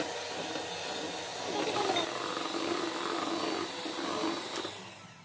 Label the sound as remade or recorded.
recorded